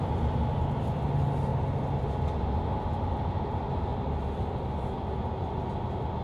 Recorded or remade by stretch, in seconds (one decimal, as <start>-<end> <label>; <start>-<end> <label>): 0.0-6.2 recorded